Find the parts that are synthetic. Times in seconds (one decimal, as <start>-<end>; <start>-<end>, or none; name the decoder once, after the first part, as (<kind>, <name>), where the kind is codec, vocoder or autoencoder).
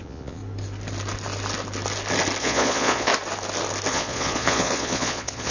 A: 0.0-0.4 (vocoder, Vocos); 2.4-3.1; 3.9-5.5